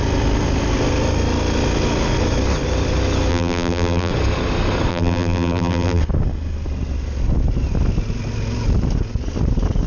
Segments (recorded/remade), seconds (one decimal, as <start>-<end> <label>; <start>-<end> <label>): 0.0-3.3 recorded; 3.3-4.1 remade; 4.1-4.9 recorded; 4.9-6.0 remade; 6.0-9.9 recorded